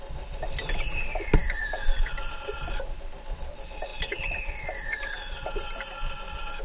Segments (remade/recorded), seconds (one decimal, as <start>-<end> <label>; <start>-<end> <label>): 0.0-6.6 recorded